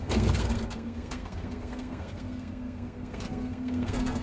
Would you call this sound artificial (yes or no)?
yes